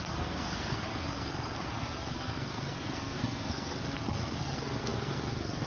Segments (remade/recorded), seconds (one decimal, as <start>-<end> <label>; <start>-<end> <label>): 0.0-5.7 remade